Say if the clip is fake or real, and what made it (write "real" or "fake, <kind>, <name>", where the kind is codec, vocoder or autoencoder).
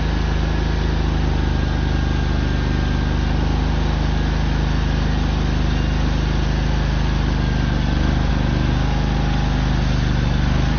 real